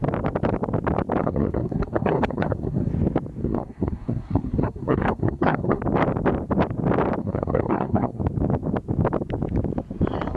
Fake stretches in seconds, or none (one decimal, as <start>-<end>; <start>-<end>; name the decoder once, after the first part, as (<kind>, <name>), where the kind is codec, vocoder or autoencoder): 1.2-2.9 (codec, SNAC); 3.4-5.8; 7.2-8.2